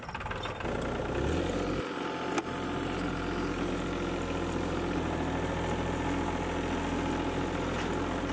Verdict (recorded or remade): recorded